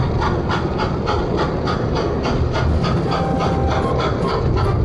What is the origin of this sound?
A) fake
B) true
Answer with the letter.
B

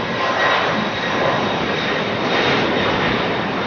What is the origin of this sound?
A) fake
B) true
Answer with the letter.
B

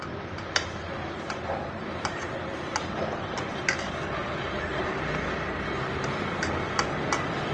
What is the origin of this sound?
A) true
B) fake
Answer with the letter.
A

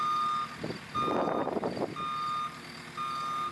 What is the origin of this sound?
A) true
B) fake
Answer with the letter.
A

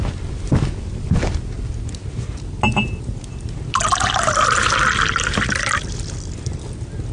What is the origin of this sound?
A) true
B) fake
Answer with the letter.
A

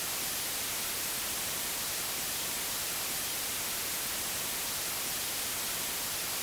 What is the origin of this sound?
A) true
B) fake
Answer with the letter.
A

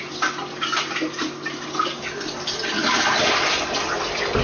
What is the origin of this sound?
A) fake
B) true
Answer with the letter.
B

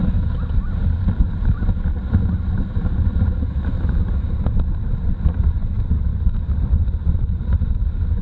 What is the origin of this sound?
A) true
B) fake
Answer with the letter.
A